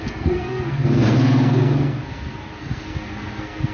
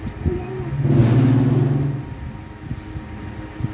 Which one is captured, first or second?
second